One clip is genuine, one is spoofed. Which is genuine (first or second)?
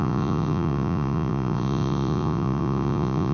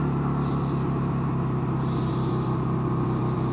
second